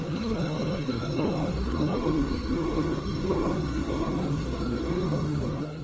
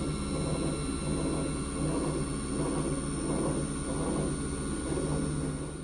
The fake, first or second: first